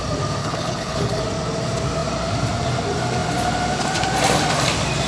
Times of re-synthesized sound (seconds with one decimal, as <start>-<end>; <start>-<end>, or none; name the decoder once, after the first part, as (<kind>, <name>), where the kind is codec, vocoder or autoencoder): 0.4-1.2 (codec, HILCodec)